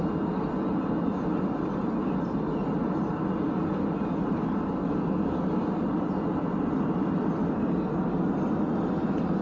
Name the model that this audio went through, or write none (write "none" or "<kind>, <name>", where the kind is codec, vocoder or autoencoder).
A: none